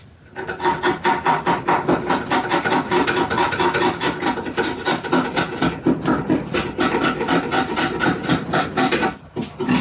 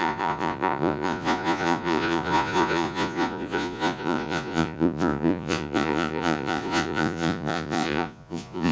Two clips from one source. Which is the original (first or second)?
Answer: first